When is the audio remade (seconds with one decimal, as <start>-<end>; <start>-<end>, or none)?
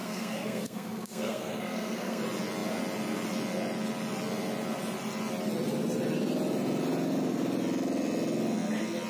0.0-2.2